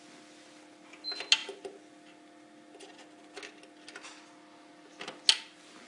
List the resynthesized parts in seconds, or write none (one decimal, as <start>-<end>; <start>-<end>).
none